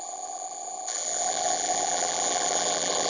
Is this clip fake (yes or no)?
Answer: yes